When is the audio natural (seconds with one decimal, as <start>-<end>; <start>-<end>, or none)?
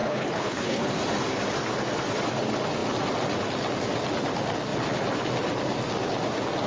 0.9-6.7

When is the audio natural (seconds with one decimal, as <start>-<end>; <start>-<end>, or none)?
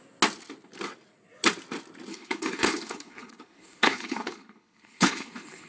0.0-2.1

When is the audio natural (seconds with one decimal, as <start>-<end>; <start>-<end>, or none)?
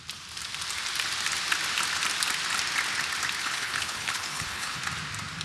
0.0-3.4; 4.8-5.4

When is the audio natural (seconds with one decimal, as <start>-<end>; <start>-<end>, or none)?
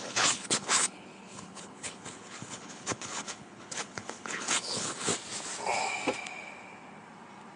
5.1-7.6